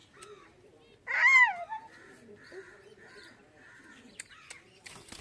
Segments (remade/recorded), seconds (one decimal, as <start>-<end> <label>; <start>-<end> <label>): 0.0-5.2 recorded